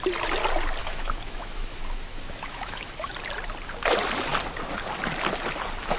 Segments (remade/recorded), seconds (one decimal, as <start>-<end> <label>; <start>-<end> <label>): 0.0-0.8 recorded; 0.8-3.1 remade; 3.1-6.0 recorded